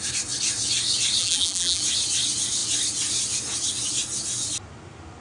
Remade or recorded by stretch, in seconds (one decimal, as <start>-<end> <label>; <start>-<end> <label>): 0.0-1.2 recorded; 1.2-1.8 remade; 1.8-5.2 recorded